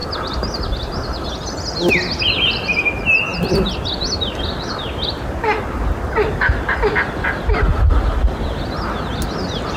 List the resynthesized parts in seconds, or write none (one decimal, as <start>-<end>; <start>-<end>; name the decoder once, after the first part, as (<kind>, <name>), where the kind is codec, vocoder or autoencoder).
0.0-0.6 (vocoder, BigVGAN v2)